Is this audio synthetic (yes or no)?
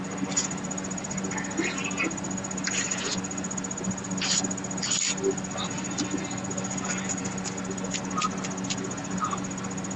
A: no